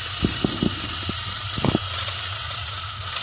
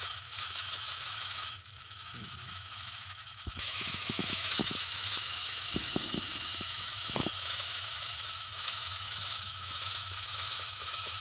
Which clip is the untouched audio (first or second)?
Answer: first